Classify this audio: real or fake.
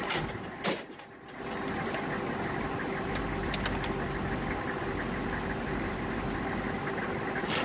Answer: real